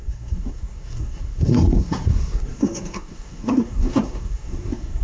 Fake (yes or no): yes